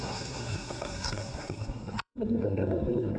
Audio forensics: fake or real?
fake